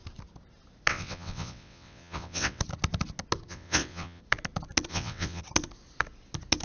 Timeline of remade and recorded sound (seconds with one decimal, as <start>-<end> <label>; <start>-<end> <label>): 0.0-0.9 recorded; 0.9-2.6 remade; 2.6-3.5 recorded; 3.5-4.2 remade; 4.2-4.9 recorded; 4.9-5.4 remade; 5.4-6.6 recorded